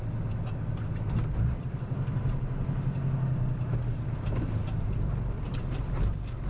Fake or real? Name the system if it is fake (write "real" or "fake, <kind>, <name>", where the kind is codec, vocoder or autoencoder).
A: real